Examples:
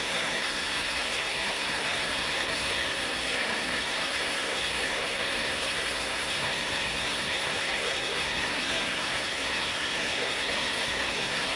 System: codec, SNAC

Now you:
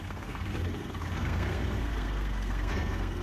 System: codec, SNAC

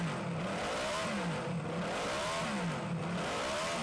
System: none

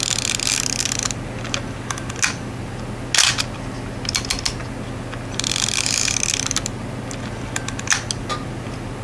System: none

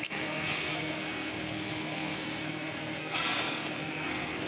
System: codec, SNAC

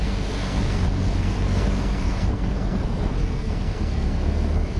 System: codec, SNAC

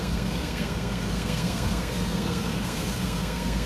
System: codec, SNAC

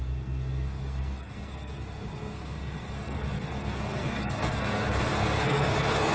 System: codec, SNAC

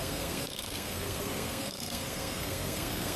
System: codec, SNAC